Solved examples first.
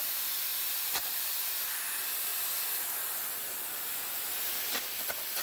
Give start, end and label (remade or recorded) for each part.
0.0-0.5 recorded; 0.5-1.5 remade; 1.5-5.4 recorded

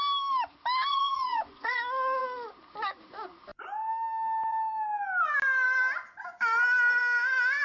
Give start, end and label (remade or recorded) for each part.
0.0-0.9 recorded; 0.9-1.8 remade; 1.8-7.6 recorded

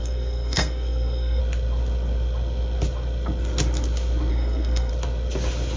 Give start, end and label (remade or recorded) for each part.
0.0-1.4 remade; 1.4-4.3 recorded; 4.3-4.9 remade; 4.9-5.8 recorded